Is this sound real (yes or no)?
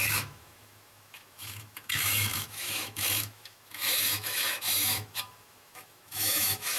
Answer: no